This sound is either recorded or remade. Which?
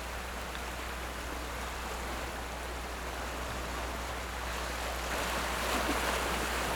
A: recorded